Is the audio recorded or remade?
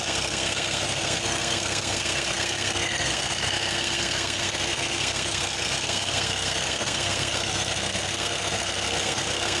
remade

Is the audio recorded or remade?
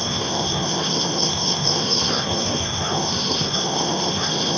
remade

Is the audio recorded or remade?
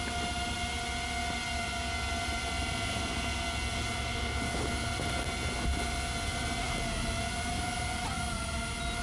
recorded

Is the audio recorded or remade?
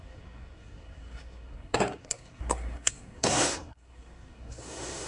remade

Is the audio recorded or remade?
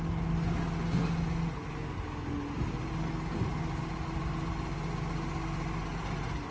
recorded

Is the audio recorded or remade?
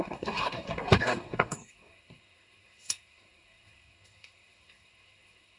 remade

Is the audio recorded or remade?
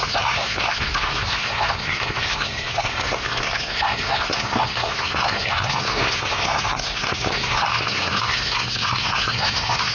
remade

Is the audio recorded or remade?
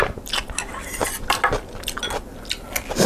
recorded